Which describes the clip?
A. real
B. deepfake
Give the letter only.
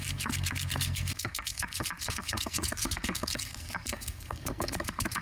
B